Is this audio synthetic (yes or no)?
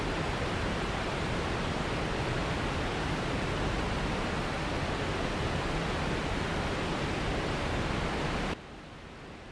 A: no